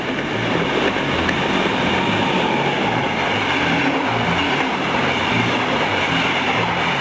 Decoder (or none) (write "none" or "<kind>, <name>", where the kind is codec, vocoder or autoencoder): none